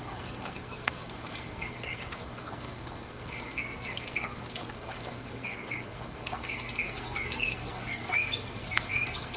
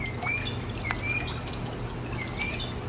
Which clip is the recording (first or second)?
second